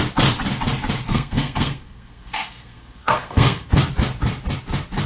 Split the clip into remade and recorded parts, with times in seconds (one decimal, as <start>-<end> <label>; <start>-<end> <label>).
0.0-1.1 recorded; 1.1-3.7 remade; 3.7-5.1 recorded